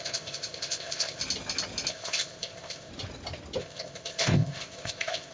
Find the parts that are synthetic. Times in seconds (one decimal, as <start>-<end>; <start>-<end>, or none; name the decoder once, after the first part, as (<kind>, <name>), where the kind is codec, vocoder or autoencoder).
0.0-1.2 (codec, ZipCodec); 1.9-2.9; 3.6-5.3